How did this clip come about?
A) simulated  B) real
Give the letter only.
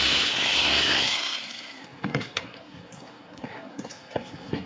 A